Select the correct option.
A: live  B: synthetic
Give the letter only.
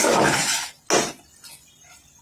A